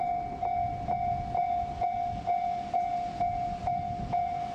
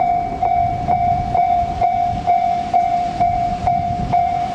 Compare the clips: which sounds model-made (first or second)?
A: second